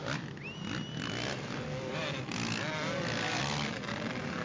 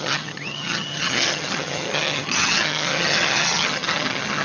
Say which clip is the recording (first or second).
first